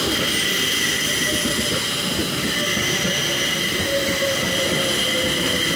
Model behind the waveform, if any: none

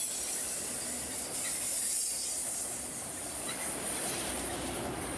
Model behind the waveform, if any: none